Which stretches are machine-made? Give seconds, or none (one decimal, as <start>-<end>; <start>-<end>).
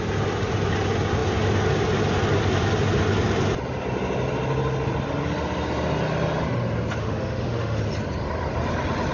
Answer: 7.0-7.8